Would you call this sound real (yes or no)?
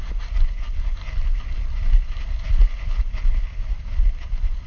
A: yes